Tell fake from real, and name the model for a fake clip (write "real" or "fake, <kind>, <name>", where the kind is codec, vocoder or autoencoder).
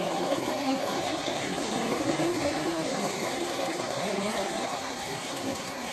fake, codec, SNAC